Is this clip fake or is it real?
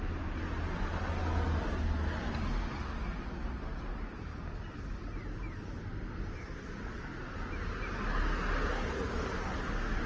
real